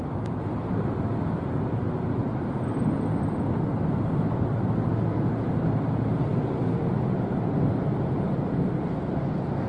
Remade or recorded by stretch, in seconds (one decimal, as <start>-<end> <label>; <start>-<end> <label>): 0.0-9.7 recorded